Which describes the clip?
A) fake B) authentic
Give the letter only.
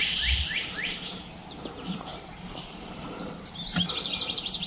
A